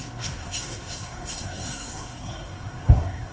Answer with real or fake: fake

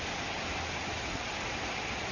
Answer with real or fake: real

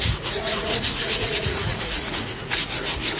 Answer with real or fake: fake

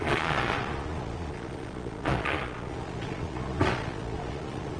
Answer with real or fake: fake